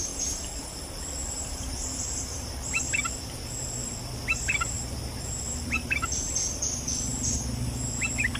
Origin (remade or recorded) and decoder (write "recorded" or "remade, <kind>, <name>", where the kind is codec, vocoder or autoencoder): remade, vocoder, BigVGAN v2